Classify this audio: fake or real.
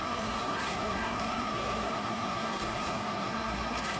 fake